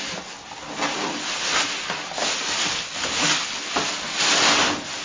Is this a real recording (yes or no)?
yes